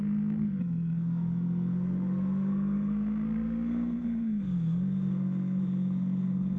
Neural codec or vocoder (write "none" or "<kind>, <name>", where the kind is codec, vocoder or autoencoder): codec, SNAC